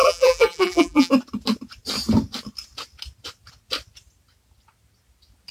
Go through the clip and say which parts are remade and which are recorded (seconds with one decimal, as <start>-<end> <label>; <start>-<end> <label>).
0.0-1.1 remade; 1.1-5.5 recorded